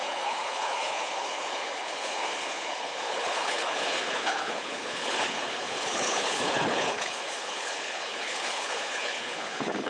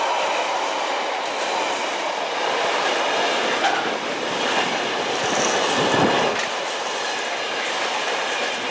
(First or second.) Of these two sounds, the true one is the second